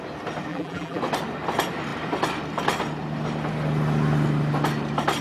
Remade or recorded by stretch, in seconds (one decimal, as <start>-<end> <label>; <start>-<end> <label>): 0.0-0.5 recorded; 0.5-1.0 remade; 1.0-5.2 recorded